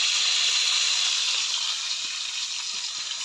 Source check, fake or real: real